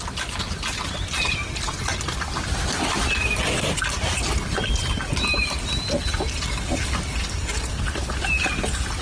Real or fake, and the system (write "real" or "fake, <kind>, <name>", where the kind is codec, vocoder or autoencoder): real